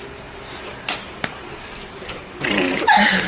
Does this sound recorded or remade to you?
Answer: remade